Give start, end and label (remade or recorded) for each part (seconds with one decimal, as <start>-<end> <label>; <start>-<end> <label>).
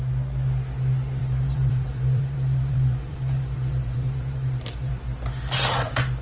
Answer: 0.0-1.2 recorded; 1.2-4.9 remade; 4.9-6.2 recorded